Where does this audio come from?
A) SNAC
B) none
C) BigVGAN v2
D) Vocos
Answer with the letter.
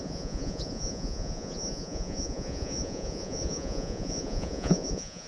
D